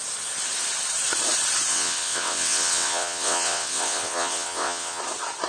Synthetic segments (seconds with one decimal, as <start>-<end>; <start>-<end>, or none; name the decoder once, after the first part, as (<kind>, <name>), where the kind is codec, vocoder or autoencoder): 1.7-5.0 (vocoder, WaveNeXt)